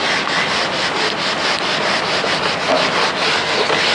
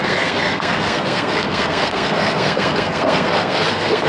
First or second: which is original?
first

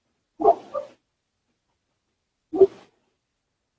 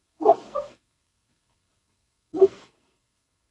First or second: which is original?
first